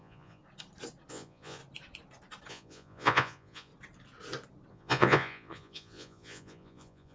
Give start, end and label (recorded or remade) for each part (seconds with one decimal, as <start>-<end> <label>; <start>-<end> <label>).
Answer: 0.0-0.4 remade; 0.4-1.1 recorded; 1.1-1.6 remade; 1.6-2.5 recorded; 2.5-3.7 remade; 3.7-4.7 recorded; 4.7-7.1 remade